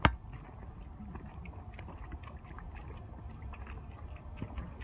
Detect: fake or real real